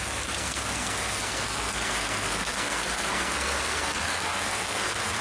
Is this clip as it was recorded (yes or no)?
no